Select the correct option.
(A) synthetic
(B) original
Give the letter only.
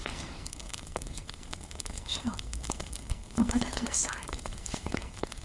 A